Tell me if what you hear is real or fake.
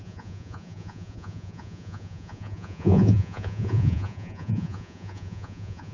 fake